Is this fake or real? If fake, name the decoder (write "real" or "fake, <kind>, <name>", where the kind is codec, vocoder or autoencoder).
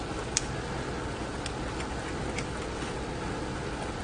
real